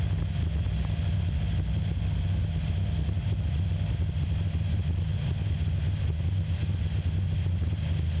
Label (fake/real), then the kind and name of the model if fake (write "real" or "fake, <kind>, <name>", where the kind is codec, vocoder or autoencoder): real